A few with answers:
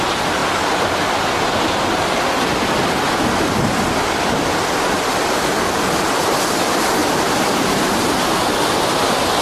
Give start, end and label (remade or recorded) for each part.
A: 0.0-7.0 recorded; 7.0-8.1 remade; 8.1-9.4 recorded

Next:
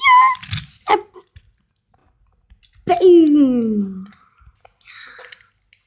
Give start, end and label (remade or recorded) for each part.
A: 0.0-5.9 recorded

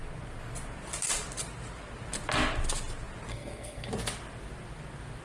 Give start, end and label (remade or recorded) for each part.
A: 0.0-3.3 recorded; 3.3-3.9 remade; 3.9-5.2 recorded

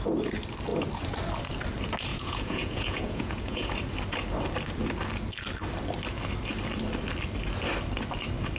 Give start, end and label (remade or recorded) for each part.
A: 0.0-2.1 recorded; 2.1-3.7 remade; 3.7-8.6 recorded

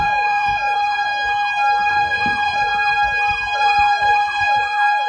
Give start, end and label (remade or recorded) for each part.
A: 0.0-1.1 remade; 1.1-1.9 recorded; 1.9-2.7 remade; 2.7-3.6 recorded; 3.6-5.1 remade

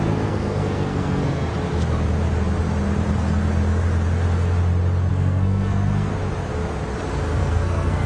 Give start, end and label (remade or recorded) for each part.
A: 0.0-1.5 remade; 1.5-5.1 recorded; 5.1-6.1 remade; 6.1-7.4 recorded; 7.4-8.1 remade

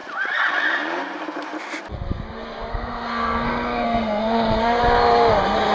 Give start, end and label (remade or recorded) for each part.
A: 0.0-2.7 recorded; 2.7-4.8 remade; 4.8-5.7 recorded

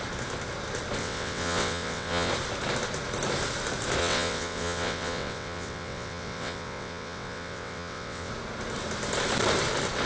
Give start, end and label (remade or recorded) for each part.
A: 0.0-1.0 recorded; 1.0-2.3 remade; 2.3-4.0 recorded; 4.0-8.3 remade; 8.3-10.1 recorded